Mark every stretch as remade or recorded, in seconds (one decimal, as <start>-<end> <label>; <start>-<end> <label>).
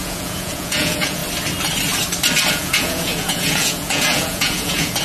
0.0-1.2 remade; 1.2-2.5 recorded; 2.5-5.0 remade